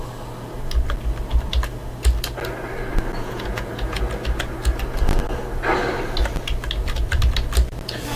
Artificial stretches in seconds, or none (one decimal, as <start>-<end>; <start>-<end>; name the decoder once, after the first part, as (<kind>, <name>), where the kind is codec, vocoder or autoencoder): 3.2-4.0 (vocoder, Vocos)